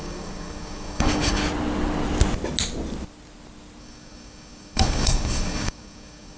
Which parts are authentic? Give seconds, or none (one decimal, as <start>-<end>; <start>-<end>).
1.4-3.8